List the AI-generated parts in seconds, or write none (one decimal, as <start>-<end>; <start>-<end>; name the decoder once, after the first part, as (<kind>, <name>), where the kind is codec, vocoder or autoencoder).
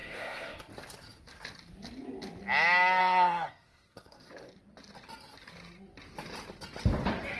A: 0.0-0.6 (codec, SNAC); 3.0-4.3